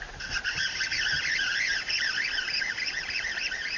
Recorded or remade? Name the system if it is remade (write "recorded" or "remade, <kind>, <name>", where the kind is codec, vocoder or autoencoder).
recorded